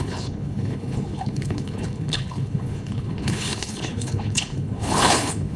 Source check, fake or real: fake